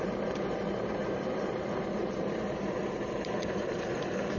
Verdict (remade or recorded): remade